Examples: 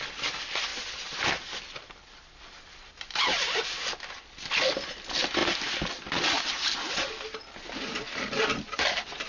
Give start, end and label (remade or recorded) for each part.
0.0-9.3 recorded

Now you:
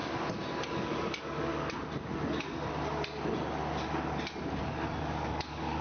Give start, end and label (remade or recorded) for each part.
0.0-0.7 recorded; 0.7-1.5 remade; 1.5-5.0 recorded; 5.0-5.8 remade

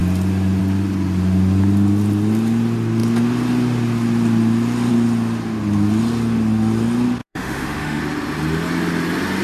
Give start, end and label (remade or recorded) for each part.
0.0-7.2 recorded; 7.2-8.0 remade; 8.0-9.4 recorded

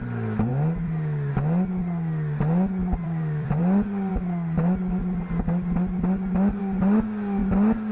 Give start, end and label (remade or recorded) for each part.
0.0-2.8 recorded; 2.8-3.6 remade; 3.6-7.9 recorded

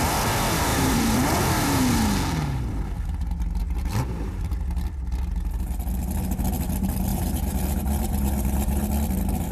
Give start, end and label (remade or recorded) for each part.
0.0-0.7 recorded; 0.7-1.4 remade; 1.4-3.6 recorded; 3.6-4.5 remade; 4.5-7.1 recorded; 7.1-8.9 remade; 8.9-9.5 recorded

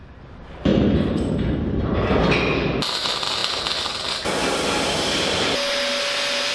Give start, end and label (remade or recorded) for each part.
0.0-0.7 recorded; 0.7-2.2 remade; 2.2-6.5 recorded